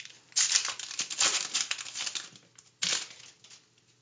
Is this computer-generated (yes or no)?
no